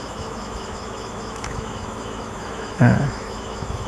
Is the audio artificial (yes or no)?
yes